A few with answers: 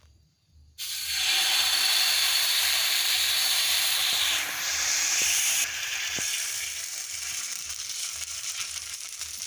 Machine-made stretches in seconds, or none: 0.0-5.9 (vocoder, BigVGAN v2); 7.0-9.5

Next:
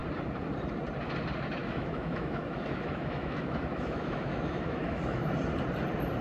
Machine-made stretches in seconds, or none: 1.6-5.3 (autoencoder, DAC-VAE)

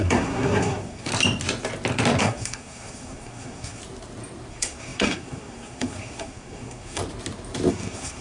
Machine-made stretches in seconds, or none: 0.0-1.1 (codec, SNAC); 2.2-3.8; 4.5-7.0; 7.7-8.2

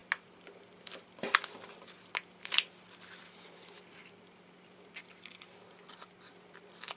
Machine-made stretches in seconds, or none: 2.3-5.0 (vocoder, BigVGAN v2); 6.3-7.0

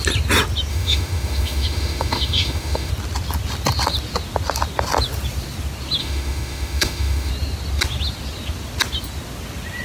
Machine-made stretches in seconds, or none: 0.7-2.9 (autoencoder, DAC-VAE); 6.0-7.3